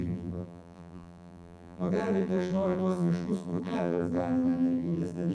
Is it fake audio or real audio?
fake